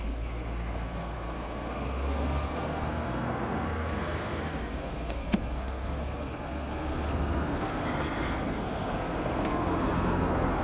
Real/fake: fake